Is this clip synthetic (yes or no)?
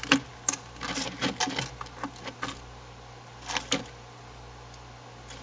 no